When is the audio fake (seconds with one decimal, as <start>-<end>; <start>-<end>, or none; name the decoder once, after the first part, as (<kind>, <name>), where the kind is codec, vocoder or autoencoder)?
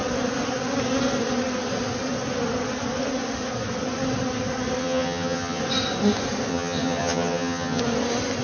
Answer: 4.8-5.6 (vocoder, HiFi-GAN); 6.5-7.8